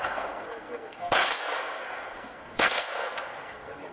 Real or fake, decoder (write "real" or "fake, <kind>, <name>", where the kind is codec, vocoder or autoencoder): fake, codec, SNAC